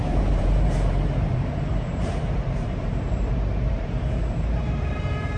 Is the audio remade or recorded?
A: remade